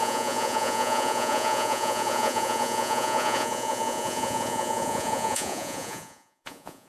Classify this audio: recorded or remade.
remade